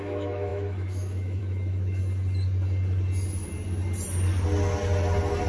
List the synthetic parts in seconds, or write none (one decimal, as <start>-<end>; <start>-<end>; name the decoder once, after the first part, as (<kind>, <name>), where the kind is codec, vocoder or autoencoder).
0.0-2.0 (autoencoder, DAC-VAE)